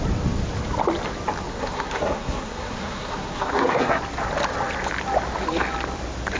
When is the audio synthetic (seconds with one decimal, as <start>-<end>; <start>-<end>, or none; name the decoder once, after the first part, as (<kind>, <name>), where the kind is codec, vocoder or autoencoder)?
1.5-4.0 (codec, SNAC)